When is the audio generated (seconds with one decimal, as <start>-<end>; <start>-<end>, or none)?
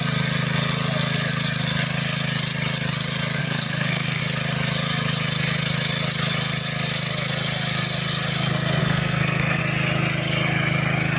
3.4-4.2; 8.8-9.6